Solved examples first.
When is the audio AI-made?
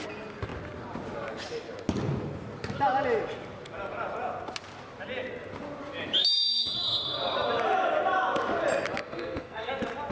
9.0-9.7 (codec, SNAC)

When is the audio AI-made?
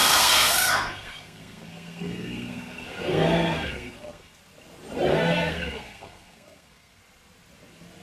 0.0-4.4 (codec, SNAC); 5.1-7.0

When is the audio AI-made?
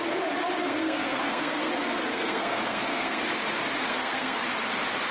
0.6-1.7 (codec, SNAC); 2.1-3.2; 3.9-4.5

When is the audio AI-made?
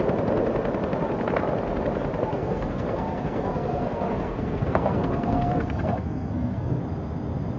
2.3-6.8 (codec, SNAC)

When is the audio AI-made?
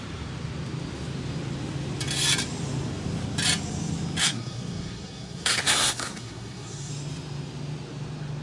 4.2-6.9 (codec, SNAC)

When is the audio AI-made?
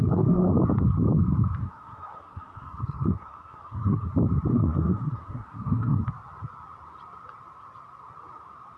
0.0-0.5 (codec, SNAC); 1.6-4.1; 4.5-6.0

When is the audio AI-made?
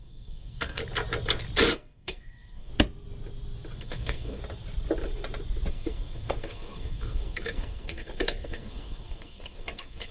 0.0-0.8 (codec, SNAC); 1.7-2.7; 3.8-4.4; 5.7-10.1